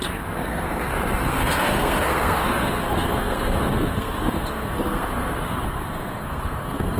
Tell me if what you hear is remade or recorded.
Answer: remade